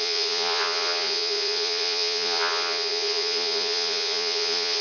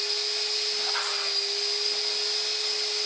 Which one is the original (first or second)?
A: second